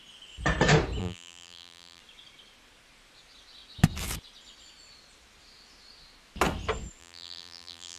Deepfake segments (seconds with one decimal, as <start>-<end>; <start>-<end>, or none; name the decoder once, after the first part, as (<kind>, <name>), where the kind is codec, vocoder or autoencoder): 1.0-2.0 (vocoder, BigVGAN v2); 7.0-8.0